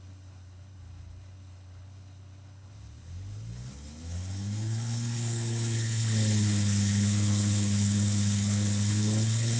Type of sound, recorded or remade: remade